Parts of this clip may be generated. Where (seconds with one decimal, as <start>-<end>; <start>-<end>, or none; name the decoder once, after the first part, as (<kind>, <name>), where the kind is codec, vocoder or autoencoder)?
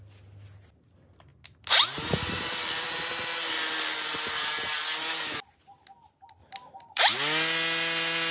6.4-7.0 (vocoder, BigVGAN v2)